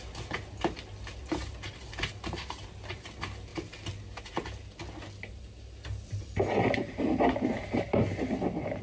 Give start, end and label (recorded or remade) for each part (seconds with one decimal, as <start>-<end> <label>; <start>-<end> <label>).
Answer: 0.0-8.8 recorded